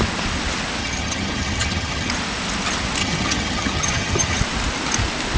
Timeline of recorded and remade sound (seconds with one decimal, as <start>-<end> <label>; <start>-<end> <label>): 0.0-0.8 recorded; 0.8-2.1 remade; 2.1-3.0 recorded; 3.0-4.4 remade; 4.4-5.4 recorded